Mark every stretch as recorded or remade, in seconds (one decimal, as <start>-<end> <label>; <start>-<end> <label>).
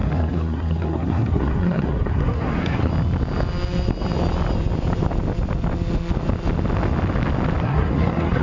0.0-2.9 remade; 2.9-7.6 recorded; 7.6-8.4 remade